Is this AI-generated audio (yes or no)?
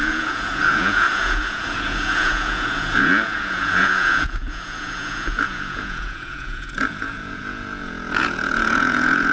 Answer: yes